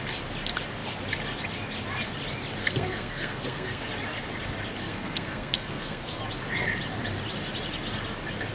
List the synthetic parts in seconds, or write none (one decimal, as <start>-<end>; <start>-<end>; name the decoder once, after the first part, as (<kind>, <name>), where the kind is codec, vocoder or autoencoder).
2.6-3.9 (codec, SNAC); 4.8-6.2